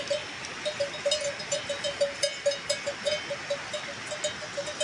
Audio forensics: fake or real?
real